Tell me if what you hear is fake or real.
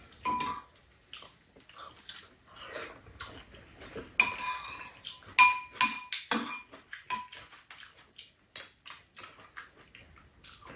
real